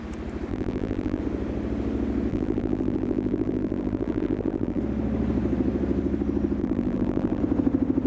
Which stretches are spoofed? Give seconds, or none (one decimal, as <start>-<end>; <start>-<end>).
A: 0.5-1.2; 2.3-4.8; 6.6-7.4

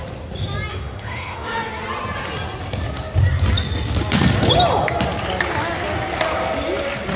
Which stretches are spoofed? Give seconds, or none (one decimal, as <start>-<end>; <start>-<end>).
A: 0.7-1.7